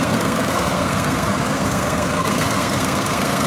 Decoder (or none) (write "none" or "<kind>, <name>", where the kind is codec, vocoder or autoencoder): codec, SNAC